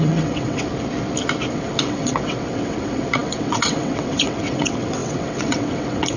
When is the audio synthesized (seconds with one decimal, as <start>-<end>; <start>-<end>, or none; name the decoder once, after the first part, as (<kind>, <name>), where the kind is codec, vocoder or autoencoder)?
0.0-0.7 (vocoder, WaveNeXt); 1.5-6.2